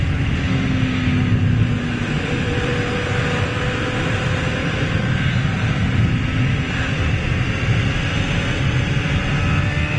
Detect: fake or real real